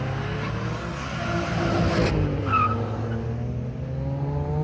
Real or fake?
real